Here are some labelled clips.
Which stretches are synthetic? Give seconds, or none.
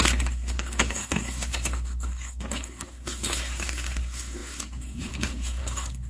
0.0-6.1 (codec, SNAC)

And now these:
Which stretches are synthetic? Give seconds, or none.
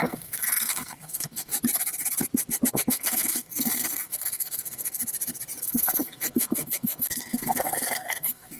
0.0-1.5 (codec, SNAC); 2.7-5.0; 5.6-8.6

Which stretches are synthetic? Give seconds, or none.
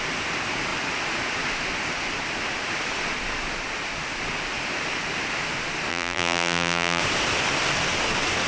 5.9-7.0 (vocoder, BigVGAN v2)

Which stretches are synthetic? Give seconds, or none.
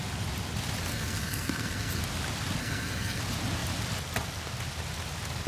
0.9-2.0 (codec, SNAC); 2.6-3.2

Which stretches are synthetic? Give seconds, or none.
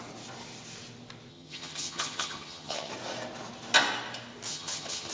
1.3-2.9 (vocoder, HiFi-GAN); 4.5-5.1